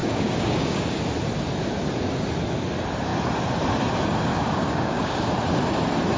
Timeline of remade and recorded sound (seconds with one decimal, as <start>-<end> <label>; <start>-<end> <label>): 0.0-1.0 remade; 1.0-4.3 recorded; 4.3-5.3 remade; 5.3-6.2 recorded

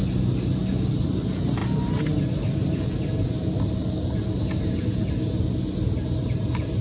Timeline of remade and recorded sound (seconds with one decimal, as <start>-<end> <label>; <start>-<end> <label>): 0.0-6.8 recorded

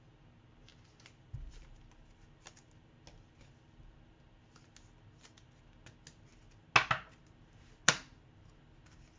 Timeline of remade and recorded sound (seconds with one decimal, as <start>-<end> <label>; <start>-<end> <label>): 0.0-9.2 recorded

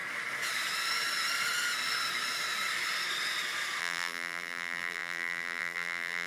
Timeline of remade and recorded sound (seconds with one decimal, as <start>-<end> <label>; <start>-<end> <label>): 0.0-3.8 recorded; 3.8-6.3 remade

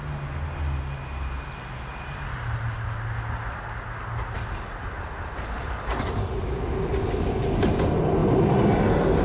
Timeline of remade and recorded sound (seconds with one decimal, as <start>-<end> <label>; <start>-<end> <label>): 0.0-9.2 recorded

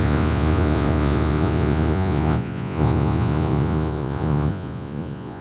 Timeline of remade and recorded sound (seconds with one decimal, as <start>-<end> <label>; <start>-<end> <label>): 0.0-5.4 remade

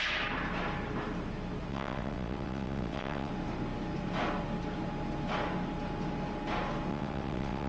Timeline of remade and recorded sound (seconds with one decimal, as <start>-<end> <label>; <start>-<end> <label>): 0.0-1.7 recorded; 1.7-3.3 remade; 3.3-6.9 recorded; 6.9-7.7 remade